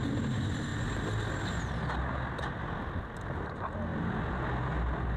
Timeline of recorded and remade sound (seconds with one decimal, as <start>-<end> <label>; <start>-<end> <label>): 0.0-5.2 recorded

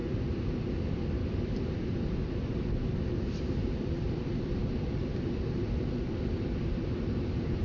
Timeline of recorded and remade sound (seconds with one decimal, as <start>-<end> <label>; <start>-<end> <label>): 0.0-0.6 remade; 0.6-1.2 recorded; 1.2-2.2 remade; 2.2-7.6 recorded

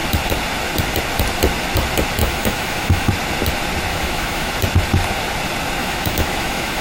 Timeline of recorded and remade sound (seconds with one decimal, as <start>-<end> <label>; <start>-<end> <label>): 0.0-2.2 recorded; 2.2-3.1 remade; 3.1-3.9 recorded; 3.9-4.5 remade; 4.5-5.8 recorded; 5.8-6.8 remade

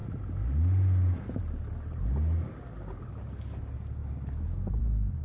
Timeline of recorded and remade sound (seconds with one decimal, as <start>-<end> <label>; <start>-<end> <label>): 0.0-5.2 recorded

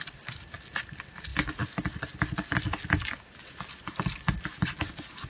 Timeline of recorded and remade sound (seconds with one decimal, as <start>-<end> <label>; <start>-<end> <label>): 0.0-5.3 recorded